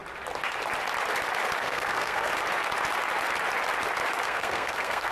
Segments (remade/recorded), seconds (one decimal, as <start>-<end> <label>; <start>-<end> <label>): 0.0-1.6 recorded; 1.6-2.3 remade; 2.3-4.2 recorded; 4.2-5.1 remade